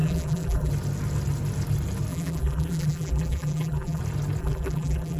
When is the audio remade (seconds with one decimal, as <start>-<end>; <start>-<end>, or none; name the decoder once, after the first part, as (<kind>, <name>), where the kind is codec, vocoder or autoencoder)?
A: 0.0-0.7 (vocoder, BigVGAN v2); 2.1-4.0; 4.4-5.2

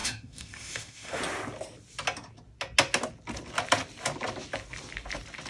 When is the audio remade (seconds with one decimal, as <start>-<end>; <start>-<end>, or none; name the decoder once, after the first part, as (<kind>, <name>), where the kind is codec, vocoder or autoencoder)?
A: 0.0-1.2 (autoencoder, DAC-VAE)

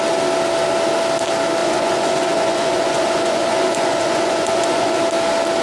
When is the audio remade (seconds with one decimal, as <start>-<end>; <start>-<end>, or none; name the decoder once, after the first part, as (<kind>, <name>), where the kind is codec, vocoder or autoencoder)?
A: 1.6-5.0 (vocoder, Vocos)